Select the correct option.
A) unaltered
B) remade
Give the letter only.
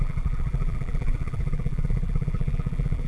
B